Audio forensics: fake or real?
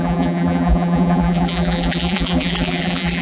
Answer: fake